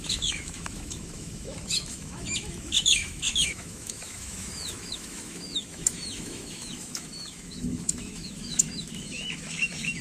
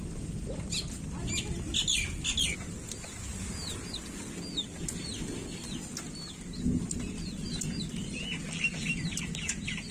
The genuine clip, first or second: second